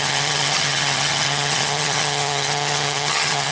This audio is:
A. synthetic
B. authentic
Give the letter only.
A